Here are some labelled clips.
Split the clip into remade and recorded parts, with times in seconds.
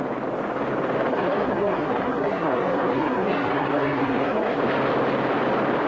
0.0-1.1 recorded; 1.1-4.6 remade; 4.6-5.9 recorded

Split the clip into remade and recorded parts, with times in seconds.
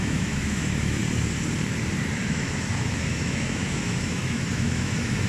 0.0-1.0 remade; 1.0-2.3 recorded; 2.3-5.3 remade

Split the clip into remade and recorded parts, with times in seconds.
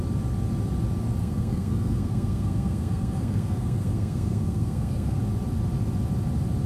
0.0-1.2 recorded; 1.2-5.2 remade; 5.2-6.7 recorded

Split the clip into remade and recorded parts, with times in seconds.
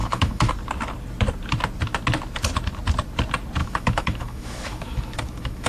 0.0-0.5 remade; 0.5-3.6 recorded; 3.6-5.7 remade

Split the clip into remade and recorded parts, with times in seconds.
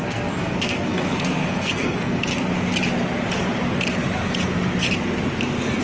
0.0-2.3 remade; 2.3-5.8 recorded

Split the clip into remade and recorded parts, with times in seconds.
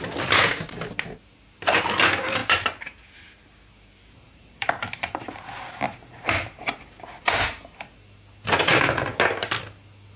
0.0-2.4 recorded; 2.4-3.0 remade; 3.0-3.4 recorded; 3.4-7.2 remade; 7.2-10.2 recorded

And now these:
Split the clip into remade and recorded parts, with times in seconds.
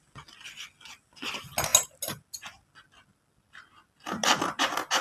0.0-5.0 recorded